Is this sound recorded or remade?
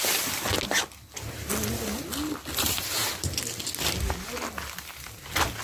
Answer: recorded